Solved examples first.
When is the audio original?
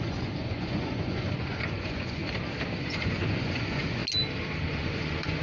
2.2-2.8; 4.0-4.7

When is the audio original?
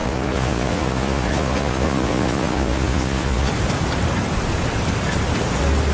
3.5-5.9